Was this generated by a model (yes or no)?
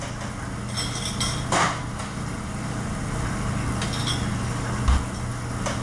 no